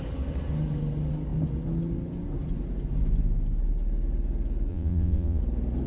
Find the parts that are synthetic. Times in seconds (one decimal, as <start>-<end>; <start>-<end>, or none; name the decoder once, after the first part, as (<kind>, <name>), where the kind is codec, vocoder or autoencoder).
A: 4.7-5.4 (vocoder, Vocos)